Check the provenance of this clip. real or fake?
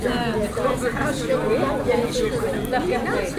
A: fake